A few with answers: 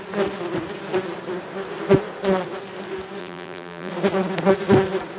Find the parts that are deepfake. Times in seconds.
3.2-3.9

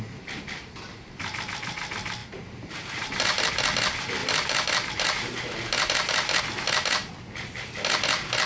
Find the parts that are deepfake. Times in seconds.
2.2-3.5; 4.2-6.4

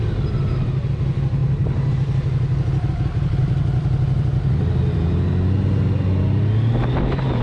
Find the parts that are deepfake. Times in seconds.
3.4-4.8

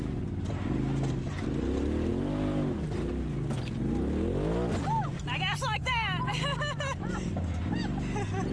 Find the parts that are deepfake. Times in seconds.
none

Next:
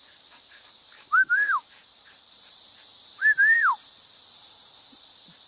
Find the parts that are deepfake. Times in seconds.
1.8-2.5; 3.1-5.1

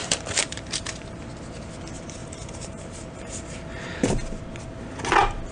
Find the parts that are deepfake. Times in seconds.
0.0-1.2; 2.2-4.4